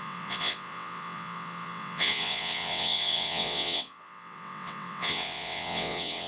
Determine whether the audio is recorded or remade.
remade